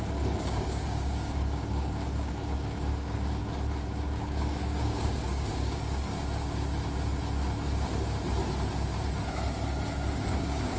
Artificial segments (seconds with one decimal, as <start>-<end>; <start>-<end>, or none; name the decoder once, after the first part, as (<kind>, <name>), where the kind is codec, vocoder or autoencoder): 0.0-3.4 (codec, DAC); 4.2-6.1; 10.1-10.8